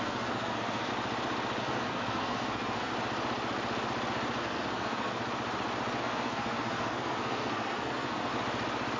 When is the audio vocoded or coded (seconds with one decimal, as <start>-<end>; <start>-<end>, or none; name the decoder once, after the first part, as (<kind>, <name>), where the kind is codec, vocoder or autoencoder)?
0.0-0.9 (codec, SNAC); 1.6-2.9; 4.4-5.2; 6.0-8.3